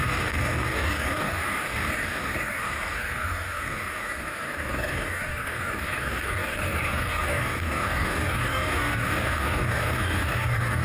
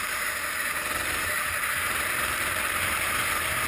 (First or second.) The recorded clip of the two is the second